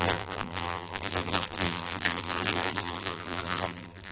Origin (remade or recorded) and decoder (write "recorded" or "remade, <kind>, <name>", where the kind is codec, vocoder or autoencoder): remade, vocoder, BigVGAN v2